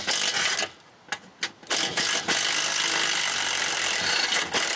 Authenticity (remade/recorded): recorded